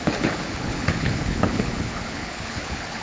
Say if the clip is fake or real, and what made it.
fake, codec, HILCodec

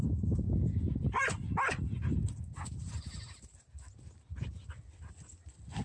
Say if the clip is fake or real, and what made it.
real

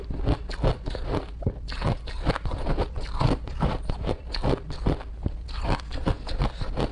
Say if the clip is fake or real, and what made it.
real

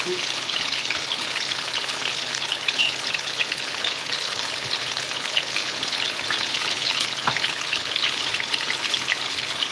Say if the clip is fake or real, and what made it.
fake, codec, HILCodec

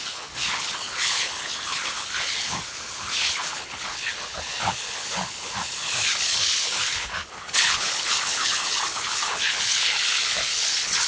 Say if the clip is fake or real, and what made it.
fake, codec, HILCodec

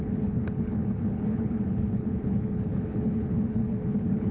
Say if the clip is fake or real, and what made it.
fake, codec, HILCodec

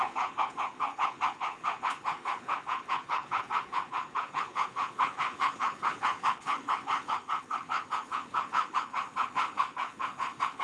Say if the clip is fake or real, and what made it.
fake, codec, HILCodec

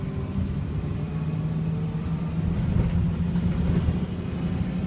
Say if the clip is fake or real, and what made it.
real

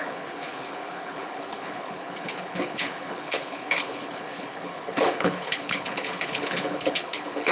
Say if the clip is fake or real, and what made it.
fake, codec, HILCodec